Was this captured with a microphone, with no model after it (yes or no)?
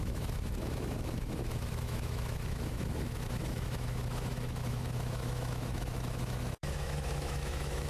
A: no